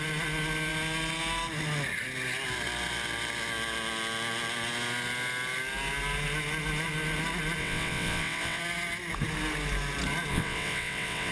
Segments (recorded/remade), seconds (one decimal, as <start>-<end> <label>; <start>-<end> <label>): 0.0-7.6 recorded; 7.6-8.6 remade; 8.6-10.3 recorded; 10.3-11.3 remade